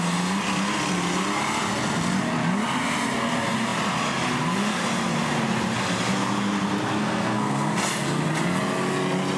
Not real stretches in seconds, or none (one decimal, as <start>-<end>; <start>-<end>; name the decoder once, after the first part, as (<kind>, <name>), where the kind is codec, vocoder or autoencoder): 7.0-7.7 (codec, SNAC)

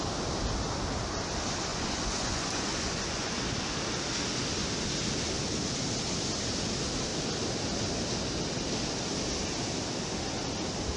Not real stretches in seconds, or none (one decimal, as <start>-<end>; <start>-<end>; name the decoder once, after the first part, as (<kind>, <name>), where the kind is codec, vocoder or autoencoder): 1.7-3.4 (vocoder, Vocos)

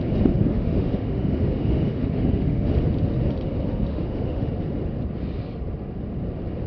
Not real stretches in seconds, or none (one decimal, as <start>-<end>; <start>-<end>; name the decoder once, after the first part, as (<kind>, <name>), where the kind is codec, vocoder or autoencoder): 0.5-2.7 (autoencoder, DAC-VAE); 3.9-4.5

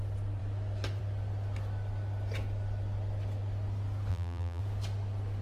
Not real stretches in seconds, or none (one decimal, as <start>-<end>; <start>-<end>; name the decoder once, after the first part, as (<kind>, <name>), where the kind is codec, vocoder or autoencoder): 4.1-4.6 (vocoder, BigVGAN v2)

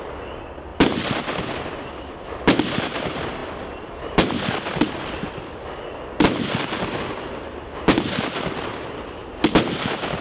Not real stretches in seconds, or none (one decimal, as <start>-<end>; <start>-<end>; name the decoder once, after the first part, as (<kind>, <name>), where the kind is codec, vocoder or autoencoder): 0.7-1.9 (vocoder, BigVGAN v2)

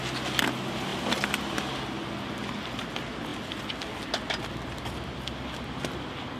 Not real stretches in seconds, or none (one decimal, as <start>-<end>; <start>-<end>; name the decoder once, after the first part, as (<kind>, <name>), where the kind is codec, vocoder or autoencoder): none